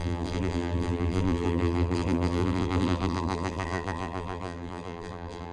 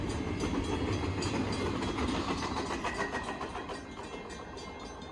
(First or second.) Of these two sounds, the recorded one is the second